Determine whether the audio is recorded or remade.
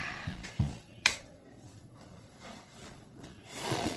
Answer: remade